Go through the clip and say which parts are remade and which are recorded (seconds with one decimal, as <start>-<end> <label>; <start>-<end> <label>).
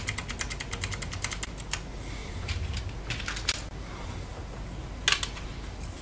0.0-2.2 recorded; 2.2-2.8 remade; 2.8-6.0 recorded